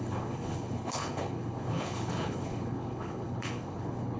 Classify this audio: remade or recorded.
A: remade